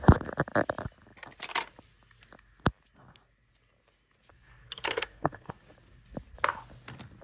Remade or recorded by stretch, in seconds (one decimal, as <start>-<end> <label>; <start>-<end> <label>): 0.0-4.3 recorded; 4.3-5.5 remade; 5.5-7.2 recorded